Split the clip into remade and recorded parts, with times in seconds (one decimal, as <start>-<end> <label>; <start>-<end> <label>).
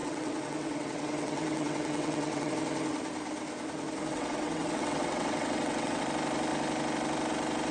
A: 0.0-2.5 remade; 2.5-4.1 recorded; 4.1-6.0 remade; 6.0-7.7 recorded